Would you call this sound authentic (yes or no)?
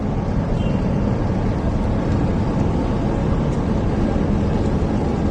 yes